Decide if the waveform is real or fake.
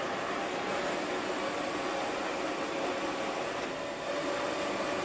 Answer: real